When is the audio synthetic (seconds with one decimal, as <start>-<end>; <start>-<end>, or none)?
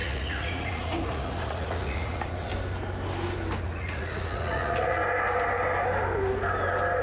0.0-2.5; 3.6-5.0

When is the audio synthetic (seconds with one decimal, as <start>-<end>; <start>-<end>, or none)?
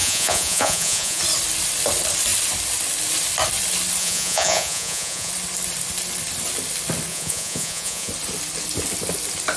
0.0-1.2; 4.0-5.3; 7.1-8.1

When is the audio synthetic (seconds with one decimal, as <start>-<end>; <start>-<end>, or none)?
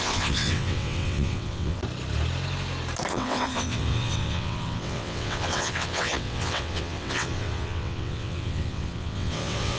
0.0-1.8; 3.1-9.8